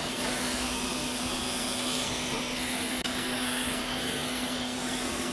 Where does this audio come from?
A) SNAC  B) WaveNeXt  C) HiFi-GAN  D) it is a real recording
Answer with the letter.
A